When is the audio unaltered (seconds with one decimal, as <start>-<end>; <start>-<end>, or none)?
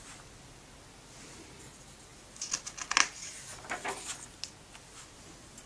0.0-5.7